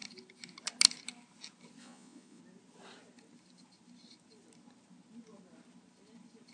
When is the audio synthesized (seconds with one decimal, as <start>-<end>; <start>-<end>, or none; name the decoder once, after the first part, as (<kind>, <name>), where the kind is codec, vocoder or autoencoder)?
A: 1.8-2.4 (vocoder, Vocos)